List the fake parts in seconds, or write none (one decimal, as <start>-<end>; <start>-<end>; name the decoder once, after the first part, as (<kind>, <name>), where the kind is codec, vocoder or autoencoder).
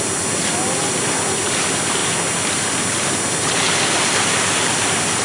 none